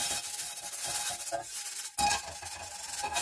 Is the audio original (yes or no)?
yes